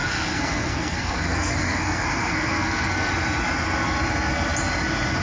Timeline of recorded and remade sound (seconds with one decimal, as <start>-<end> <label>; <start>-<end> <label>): 0.0-3.1 remade; 3.1-5.2 recorded